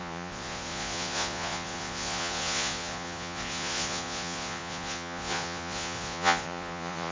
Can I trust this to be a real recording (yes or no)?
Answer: no